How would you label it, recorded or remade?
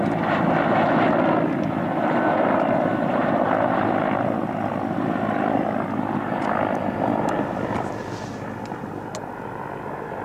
recorded